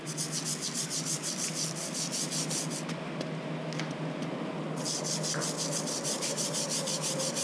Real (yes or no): yes